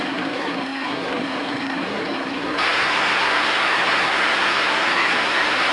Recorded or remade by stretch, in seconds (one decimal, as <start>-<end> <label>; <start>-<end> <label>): 0.0-5.7 remade